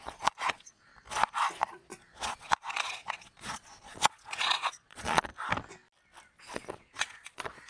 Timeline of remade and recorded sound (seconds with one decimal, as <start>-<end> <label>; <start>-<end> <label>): 0.0-0.9 remade; 0.9-1.5 recorded; 1.5-5.3 remade; 5.3-6.4 recorded; 6.4-7.7 remade